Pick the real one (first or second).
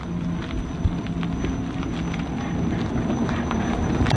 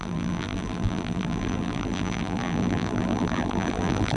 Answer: first